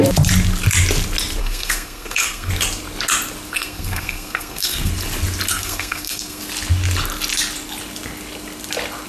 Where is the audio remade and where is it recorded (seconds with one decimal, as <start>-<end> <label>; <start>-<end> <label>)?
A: 0.0-1.4 recorded; 1.4-2.5 remade; 2.5-3.5 recorded; 3.5-4.9 remade; 4.9-5.5 recorded; 5.5-6.4 remade; 6.4-9.1 recorded